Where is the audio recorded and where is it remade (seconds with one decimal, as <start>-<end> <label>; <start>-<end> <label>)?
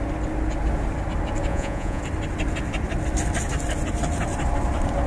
0.0-1.5 recorded; 1.5-2.0 remade; 2.0-5.1 recorded